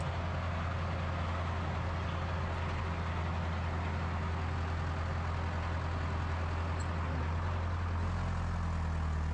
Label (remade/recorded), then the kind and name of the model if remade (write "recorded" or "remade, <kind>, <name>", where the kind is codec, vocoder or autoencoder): recorded